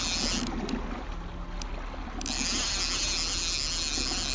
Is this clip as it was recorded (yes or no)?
yes